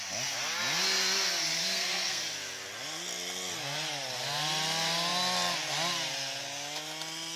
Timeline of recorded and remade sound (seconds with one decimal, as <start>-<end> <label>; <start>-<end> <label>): 0.0-1.6 recorded; 1.6-2.2 remade; 2.2-7.4 recorded